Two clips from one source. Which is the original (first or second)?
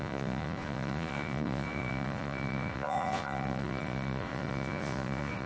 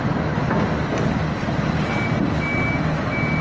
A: second